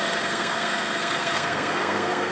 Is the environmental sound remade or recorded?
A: remade